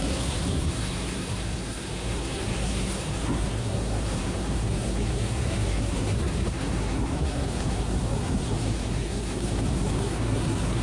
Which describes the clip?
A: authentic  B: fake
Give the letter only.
B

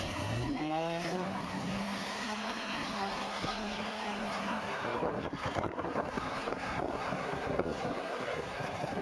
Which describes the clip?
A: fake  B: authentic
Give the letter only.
A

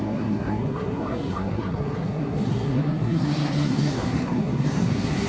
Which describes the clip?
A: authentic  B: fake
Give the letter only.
B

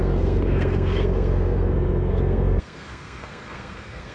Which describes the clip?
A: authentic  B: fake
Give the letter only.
B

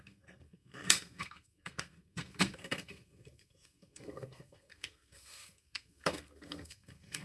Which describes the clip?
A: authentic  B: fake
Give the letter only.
B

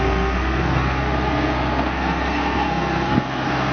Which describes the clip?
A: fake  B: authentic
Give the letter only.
A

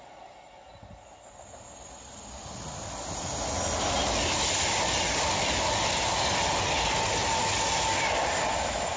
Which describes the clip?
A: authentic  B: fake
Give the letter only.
A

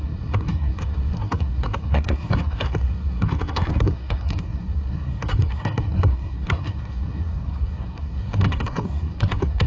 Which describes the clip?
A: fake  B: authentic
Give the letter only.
A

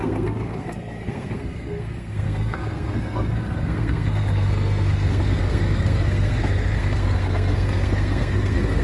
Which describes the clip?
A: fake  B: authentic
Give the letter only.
A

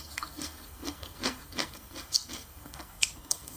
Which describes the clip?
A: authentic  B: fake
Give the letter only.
B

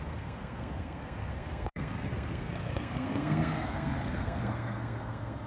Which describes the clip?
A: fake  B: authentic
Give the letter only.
A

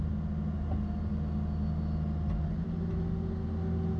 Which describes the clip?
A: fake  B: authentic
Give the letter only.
B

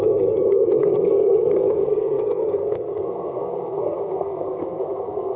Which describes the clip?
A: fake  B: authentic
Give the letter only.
A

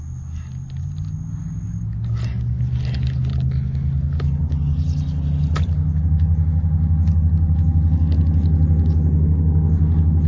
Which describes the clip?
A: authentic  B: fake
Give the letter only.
A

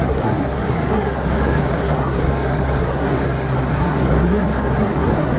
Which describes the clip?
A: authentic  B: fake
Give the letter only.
B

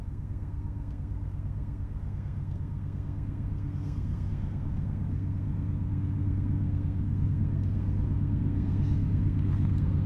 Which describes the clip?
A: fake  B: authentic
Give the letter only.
A